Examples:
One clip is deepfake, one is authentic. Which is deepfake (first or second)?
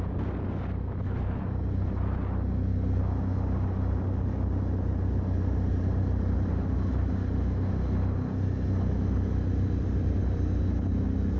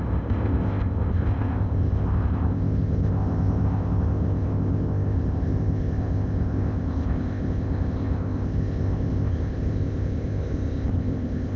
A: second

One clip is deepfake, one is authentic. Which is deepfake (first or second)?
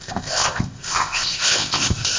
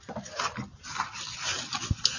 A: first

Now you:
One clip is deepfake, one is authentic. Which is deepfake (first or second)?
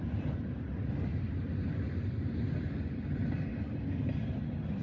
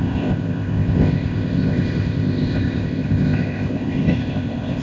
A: second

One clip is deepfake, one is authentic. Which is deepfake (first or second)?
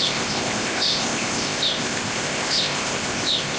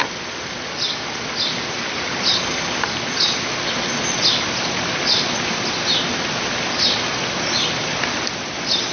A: first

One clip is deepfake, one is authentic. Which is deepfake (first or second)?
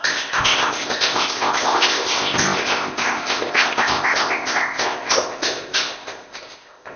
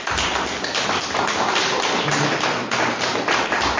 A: first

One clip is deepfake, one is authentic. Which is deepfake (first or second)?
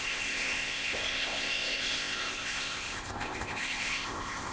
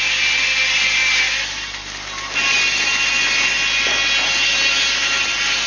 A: first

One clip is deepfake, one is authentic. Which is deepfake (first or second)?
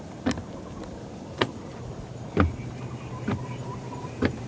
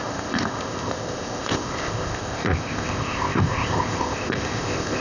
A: second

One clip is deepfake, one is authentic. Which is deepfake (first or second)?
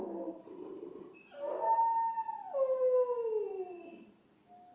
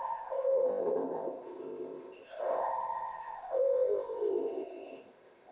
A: second